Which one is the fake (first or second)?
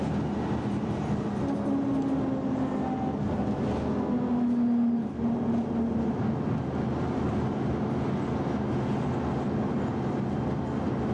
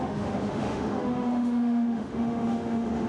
second